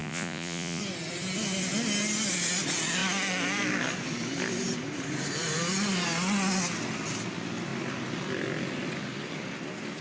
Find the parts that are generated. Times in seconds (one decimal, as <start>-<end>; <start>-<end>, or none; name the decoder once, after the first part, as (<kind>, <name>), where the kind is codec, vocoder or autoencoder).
0.0-0.8 (vocoder, Vocos)